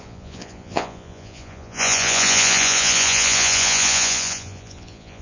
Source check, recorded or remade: remade